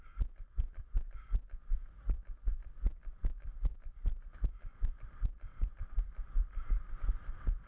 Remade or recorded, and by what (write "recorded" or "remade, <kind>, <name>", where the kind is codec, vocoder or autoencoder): recorded